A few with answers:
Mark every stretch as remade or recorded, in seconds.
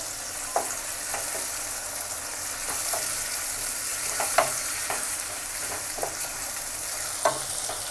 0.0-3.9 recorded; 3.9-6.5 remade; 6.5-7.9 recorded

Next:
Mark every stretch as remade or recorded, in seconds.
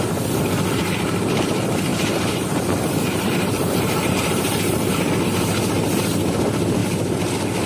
0.0-1.9 recorded; 1.9-4.9 remade; 4.9-7.7 recorded